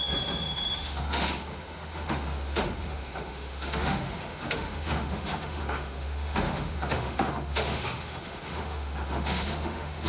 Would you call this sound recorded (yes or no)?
no